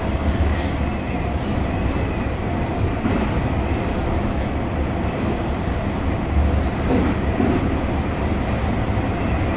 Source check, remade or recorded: recorded